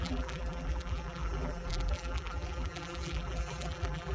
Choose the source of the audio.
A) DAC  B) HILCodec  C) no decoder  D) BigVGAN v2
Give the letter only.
D